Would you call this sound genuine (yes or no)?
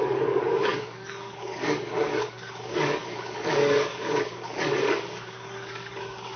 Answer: no